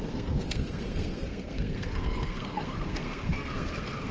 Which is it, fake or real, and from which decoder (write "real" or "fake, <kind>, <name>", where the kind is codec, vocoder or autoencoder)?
fake, codec, SNAC